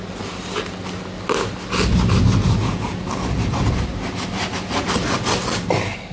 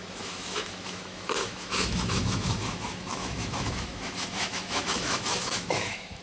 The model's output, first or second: second